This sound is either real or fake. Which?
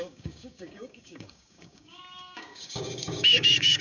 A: fake